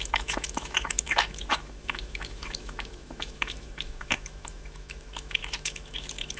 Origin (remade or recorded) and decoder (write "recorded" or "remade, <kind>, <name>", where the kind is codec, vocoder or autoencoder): remade, autoencoder, DAC-VAE